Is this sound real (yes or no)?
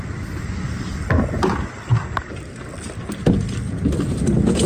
yes